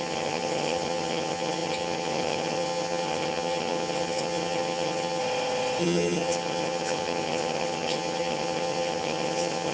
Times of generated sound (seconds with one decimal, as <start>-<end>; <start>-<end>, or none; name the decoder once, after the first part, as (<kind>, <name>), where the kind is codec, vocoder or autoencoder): 0.0-5.2 (vocoder, HiFi-GAN); 5.8-9.7